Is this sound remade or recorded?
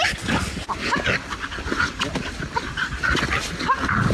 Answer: recorded